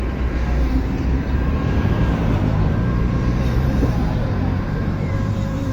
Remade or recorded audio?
remade